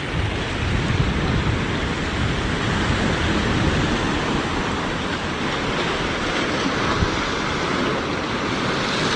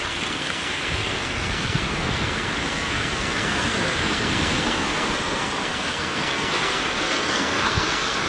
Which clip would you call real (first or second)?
first